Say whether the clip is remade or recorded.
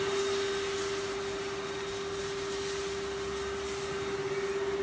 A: recorded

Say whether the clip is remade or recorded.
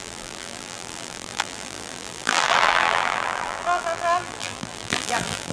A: remade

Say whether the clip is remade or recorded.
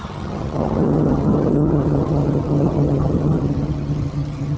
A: remade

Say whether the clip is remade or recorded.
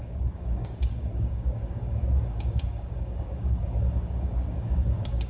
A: remade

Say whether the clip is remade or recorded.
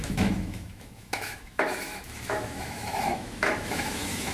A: remade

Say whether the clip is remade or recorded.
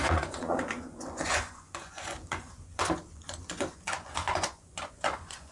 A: remade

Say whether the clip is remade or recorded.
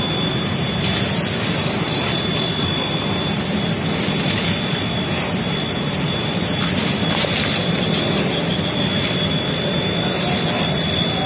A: recorded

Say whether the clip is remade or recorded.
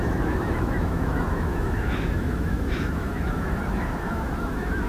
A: remade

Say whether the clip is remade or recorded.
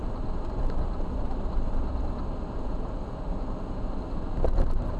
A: recorded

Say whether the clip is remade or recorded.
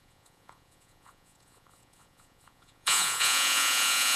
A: remade